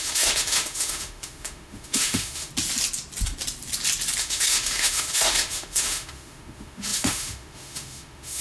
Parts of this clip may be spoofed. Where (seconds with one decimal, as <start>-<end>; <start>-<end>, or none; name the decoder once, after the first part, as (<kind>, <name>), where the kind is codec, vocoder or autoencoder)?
0.0-2.5 (autoencoder, DAC-VAE); 4.2-8.4